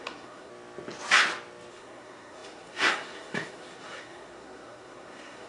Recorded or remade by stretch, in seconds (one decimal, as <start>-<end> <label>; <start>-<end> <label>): 0.0-0.5 remade; 0.5-1.7 recorded; 1.7-5.5 remade